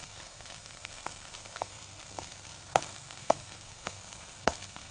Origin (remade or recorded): remade